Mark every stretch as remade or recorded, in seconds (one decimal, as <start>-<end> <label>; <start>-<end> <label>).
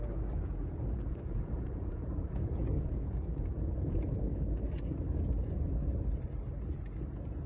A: 0.0-4.3 remade; 4.3-7.5 recorded